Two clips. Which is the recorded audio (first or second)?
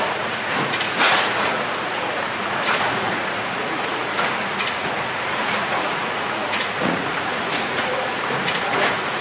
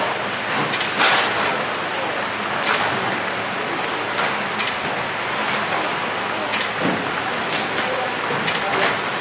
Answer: second